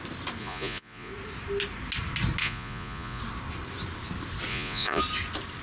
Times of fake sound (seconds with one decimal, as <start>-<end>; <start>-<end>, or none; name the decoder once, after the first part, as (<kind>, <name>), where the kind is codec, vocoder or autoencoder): 0.4-1.1 (vocoder, Vocos); 2.4-3.2; 4.5-5.0